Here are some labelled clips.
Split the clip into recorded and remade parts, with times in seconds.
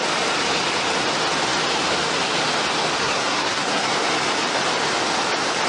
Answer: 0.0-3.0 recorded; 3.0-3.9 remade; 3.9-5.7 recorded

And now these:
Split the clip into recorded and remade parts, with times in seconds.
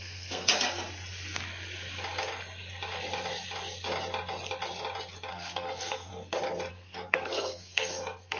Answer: 0.0-0.5 remade; 0.5-5.3 recorded; 5.3-6.1 remade; 6.1-6.7 recorded; 6.7-8.4 remade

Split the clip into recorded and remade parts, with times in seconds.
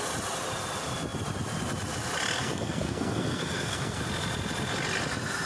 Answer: 0.0-2.4 recorded; 2.4-4.0 remade; 4.0-5.5 recorded